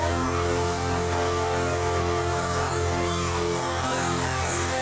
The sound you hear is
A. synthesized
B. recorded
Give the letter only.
A